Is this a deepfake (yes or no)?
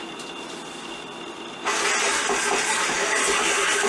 no